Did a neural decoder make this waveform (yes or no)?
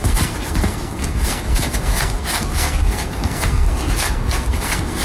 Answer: yes